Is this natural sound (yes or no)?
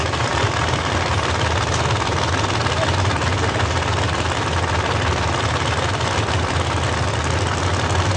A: yes